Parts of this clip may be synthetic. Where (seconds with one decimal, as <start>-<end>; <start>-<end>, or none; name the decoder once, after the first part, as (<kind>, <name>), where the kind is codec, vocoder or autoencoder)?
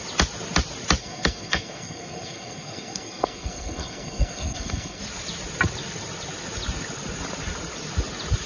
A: 1.0-5.0 (codec, SNAC)